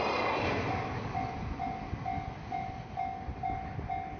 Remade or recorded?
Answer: recorded